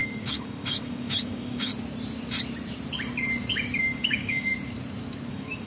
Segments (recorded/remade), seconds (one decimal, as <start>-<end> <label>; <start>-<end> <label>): 0.0-1.7 remade; 1.7-3.8 recorded; 3.8-4.5 remade; 4.5-5.3 recorded; 5.3-5.7 remade